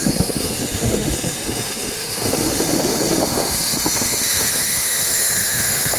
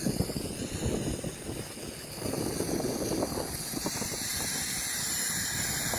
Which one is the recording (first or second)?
second